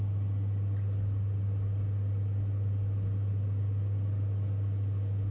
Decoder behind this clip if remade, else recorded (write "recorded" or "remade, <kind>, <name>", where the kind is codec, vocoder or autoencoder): recorded